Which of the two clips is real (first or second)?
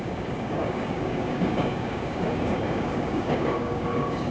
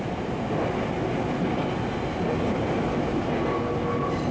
second